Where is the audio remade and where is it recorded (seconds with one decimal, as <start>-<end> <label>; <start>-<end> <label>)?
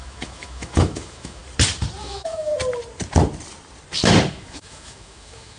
0.0-1.4 remade; 1.4-2.0 recorded; 2.0-2.5 remade; 2.5-4.3 recorded; 4.3-5.6 remade